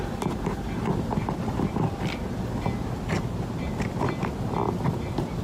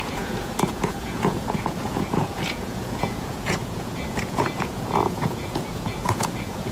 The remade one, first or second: second